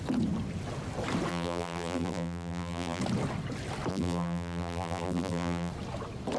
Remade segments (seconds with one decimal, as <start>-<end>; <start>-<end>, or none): 1.3-3.0; 3.9-5.7